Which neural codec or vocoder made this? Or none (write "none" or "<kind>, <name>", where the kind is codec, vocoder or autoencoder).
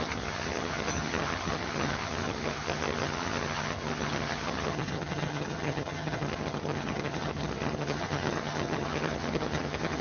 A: vocoder, HiFi-GAN